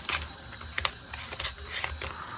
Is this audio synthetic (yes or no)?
no